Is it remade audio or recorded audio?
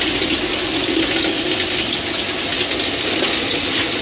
recorded